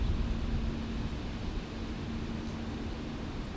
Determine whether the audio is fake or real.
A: real